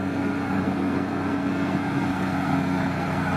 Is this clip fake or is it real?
fake